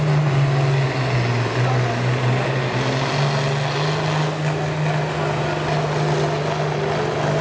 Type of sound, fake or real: real